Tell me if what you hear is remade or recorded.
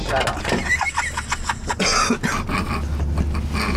recorded